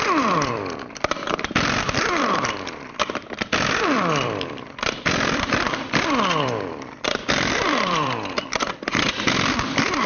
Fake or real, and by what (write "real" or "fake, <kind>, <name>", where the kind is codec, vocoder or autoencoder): fake, vocoder, BigVGAN v2